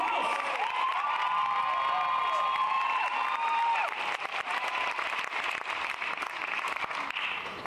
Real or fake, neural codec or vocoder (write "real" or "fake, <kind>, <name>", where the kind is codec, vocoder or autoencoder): real